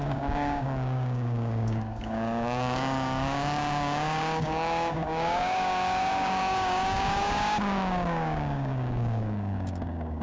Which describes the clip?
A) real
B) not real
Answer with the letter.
B